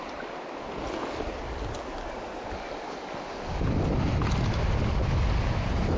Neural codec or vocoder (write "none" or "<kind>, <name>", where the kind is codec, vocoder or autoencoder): none